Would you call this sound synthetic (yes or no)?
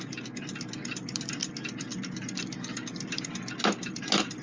no